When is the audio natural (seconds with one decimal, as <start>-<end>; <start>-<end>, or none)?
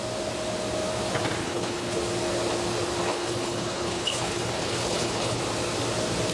0.0-1.4; 2.0-3.1; 5.4-6.3